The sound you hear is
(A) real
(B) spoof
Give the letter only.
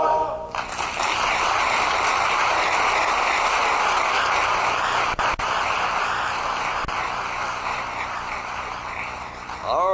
A